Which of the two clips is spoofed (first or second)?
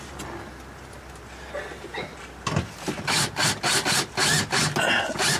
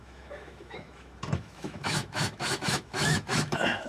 second